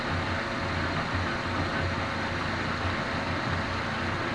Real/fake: real